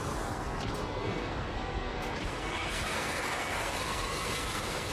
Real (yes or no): no